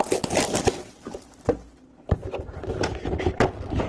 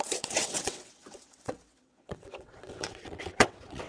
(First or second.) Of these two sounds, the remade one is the second